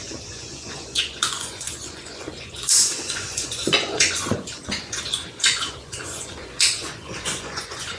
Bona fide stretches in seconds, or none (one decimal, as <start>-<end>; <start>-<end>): none